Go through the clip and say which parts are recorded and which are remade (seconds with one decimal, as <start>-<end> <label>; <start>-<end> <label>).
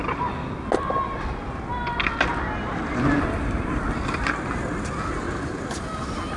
0.0-6.4 recorded